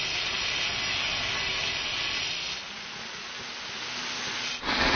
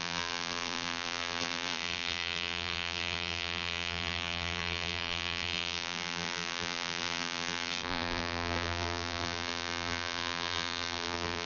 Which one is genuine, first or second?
first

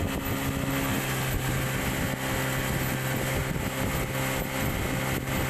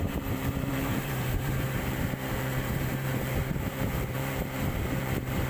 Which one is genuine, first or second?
first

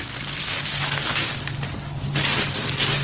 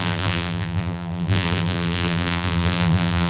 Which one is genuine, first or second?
first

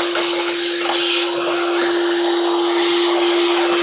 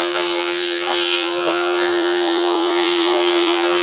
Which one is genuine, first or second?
first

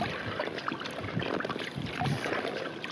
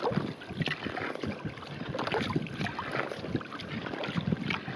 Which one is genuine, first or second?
second